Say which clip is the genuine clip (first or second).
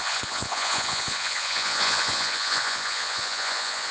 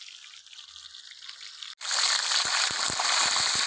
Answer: second